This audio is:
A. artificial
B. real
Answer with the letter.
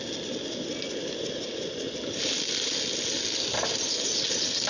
B